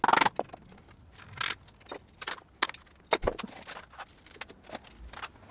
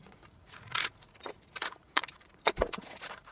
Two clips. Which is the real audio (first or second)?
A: first